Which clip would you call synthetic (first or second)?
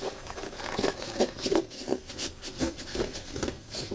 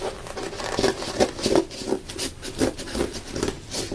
first